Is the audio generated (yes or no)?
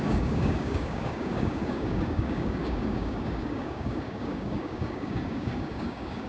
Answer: yes